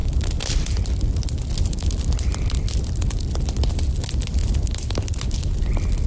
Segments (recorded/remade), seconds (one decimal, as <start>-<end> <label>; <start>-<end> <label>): 0.0-6.1 recorded